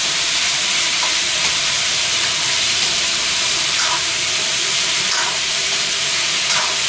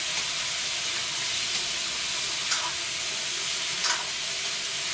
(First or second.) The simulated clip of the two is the first